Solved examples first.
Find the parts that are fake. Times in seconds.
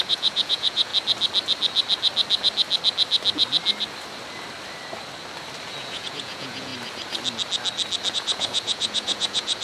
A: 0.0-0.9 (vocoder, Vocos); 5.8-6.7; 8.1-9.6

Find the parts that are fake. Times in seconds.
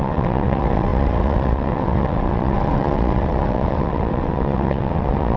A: 0.0-5.4 (vocoder, WaveNeXt)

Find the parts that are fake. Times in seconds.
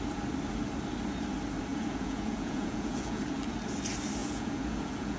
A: 1.7-3.2 (vocoder, Vocos); 4.2-5.2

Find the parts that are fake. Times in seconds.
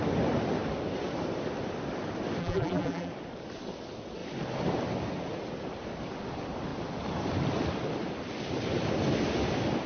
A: 2.4-3.1 (vocoder, BigVGAN v2)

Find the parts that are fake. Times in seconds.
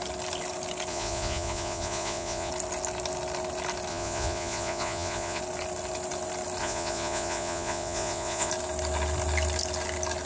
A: 0.9-2.5 (vocoder, Vocos); 3.9-5.4; 6.6-8.5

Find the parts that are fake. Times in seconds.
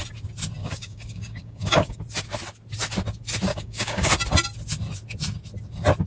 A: 0.6-2.0 (codec, DAC); 3.5-4.1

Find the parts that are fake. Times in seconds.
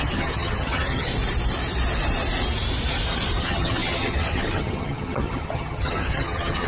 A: 0.0-1.1 (vocoder, HiFi-GAN); 3.4-6.7